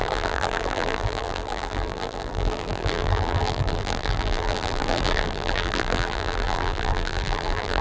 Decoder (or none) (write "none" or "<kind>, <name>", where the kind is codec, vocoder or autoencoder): vocoder, BigVGAN v2